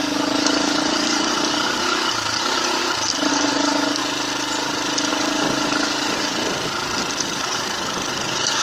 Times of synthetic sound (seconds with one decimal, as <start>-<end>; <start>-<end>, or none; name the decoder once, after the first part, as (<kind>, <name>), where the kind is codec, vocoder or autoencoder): 0.0-2.8 (codec, DAC); 3.3-4.0; 5.1-6.4; 7.2-8.6